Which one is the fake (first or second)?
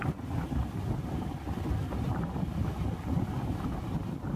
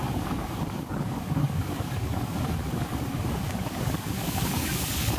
second